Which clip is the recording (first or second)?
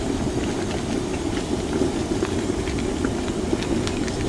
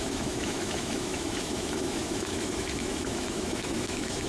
first